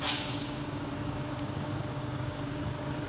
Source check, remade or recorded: remade